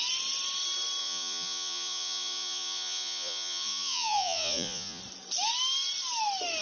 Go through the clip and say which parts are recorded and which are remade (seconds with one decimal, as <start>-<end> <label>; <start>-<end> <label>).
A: 0.0-1.0 recorded; 1.0-5.0 remade; 5.0-6.6 recorded